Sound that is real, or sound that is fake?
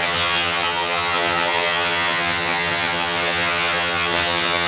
fake